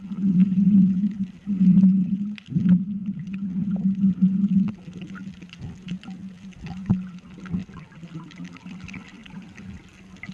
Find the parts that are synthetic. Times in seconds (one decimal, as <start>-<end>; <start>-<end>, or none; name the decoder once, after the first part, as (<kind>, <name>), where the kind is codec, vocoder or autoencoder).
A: none